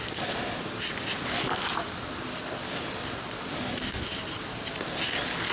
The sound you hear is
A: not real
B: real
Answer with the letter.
B